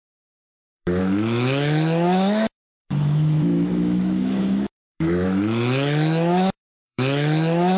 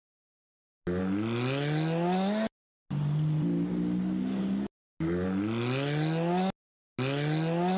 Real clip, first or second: second